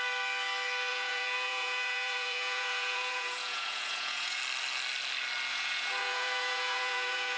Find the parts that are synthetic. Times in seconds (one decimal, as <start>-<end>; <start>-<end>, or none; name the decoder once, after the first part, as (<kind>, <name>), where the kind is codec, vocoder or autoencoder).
0.9-4.4 (vocoder, Vocos); 5.5-7.4